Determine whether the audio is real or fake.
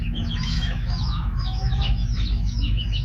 fake